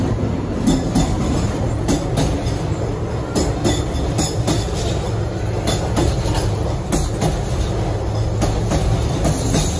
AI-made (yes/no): no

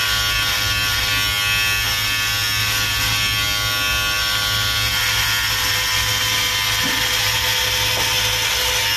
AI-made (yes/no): no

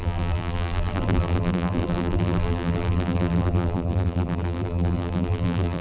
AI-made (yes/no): yes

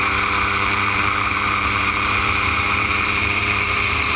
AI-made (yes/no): yes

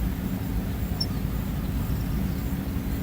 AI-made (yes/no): no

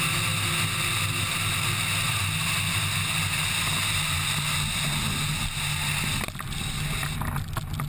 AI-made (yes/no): no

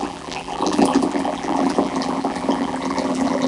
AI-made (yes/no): yes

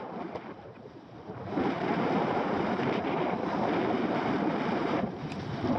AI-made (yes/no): yes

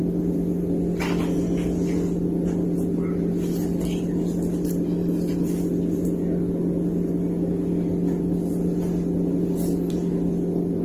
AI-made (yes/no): no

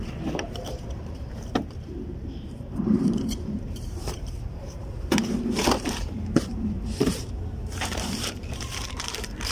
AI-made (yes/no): yes